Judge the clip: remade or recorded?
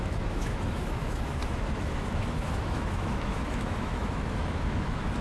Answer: remade